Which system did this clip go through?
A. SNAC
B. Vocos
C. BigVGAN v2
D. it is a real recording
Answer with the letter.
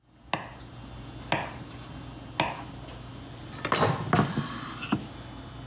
D